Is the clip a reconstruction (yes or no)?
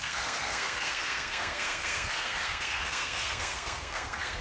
yes